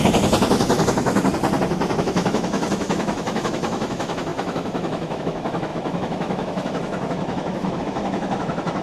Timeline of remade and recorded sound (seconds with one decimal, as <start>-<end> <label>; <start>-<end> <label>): 0.0-2.0 recorded; 2.0-8.8 remade